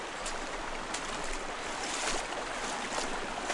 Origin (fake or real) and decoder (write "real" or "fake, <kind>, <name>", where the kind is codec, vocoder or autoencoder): real